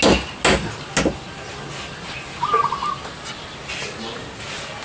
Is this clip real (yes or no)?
yes